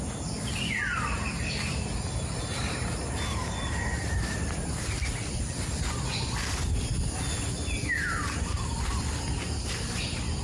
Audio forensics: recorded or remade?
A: recorded